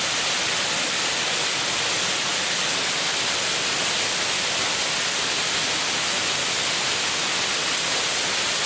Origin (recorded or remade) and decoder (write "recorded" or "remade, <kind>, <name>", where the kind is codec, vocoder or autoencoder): recorded